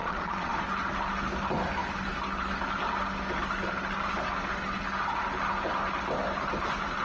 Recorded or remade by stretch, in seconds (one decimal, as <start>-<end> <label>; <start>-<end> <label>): 0.0-0.5 remade; 0.5-7.0 recorded